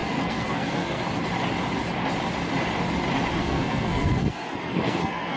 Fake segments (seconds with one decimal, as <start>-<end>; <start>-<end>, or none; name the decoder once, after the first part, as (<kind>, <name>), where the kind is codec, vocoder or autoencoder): 0.0-1.0 (codec, SNAC); 3.4-5.4